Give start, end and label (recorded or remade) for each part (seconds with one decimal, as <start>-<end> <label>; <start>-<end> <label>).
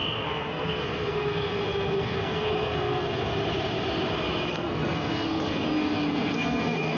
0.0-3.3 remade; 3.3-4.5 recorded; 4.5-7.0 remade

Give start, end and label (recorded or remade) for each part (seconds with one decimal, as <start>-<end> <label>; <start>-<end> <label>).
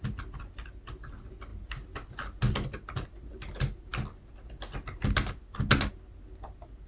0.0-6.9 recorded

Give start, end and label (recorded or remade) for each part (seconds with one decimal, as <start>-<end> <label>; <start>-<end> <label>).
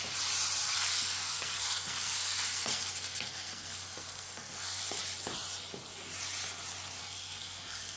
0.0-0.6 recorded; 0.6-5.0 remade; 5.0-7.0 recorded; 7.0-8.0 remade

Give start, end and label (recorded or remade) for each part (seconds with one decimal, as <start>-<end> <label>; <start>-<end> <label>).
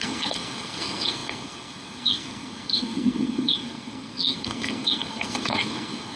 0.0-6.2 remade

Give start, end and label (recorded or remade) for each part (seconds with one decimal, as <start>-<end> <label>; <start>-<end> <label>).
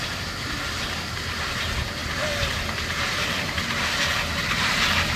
0.0-5.2 recorded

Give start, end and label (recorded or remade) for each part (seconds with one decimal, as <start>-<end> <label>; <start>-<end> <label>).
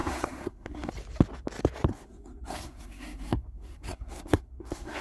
0.0-0.9 remade; 0.9-1.9 recorded; 1.9-5.0 remade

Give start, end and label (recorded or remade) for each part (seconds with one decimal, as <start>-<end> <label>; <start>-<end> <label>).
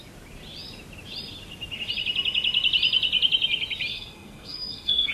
0.0-3.9 recorded; 3.9-5.1 remade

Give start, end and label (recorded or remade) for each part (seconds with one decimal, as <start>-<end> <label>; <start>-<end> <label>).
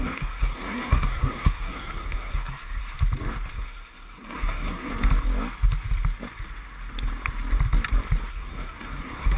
0.0-2.8 remade; 2.8-3.5 recorded; 3.5-4.9 remade; 4.9-8.3 recorded; 8.3-9.4 remade